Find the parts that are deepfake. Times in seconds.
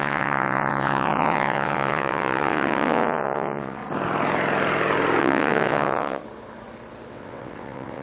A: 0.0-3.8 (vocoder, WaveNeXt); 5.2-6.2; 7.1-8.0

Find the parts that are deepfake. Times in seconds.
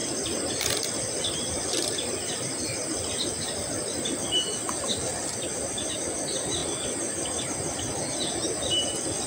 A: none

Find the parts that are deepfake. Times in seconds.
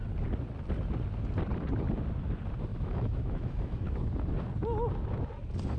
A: 2.7-4.1 (autoencoder, DAC-VAE)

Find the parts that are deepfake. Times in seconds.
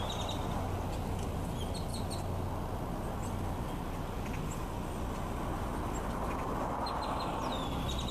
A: none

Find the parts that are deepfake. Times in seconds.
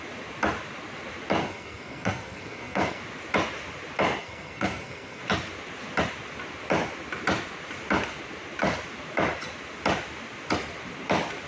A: 1.4-3.0 (codec, SNAC); 4.2-5.2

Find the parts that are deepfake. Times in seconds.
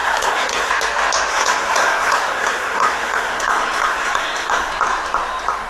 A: 0.0-0.7 (codec, SNAC); 1.3-4.7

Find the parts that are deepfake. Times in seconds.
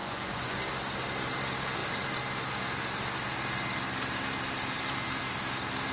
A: 0.0-0.6 (vocoder, Vocos)